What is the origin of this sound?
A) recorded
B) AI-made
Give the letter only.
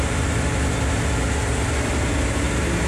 A